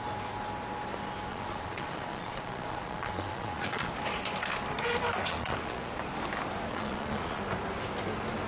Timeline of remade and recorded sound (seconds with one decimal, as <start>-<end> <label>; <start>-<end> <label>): 0.0-1.3 recorded; 1.3-3.9 remade; 3.9-5.3 recorded; 5.3-5.9 remade; 5.9-6.7 recorded; 6.7-7.4 remade; 7.4-8.5 recorded